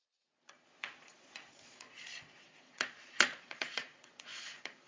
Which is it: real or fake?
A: fake